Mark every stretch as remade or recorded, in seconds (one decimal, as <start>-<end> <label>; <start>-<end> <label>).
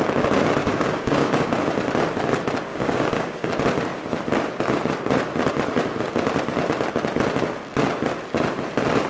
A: 0.0-0.6 recorded; 0.6-1.5 remade; 1.5-2.7 recorded; 2.7-3.5 remade; 3.5-9.1 recorded